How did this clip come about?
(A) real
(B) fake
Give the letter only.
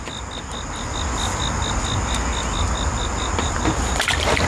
A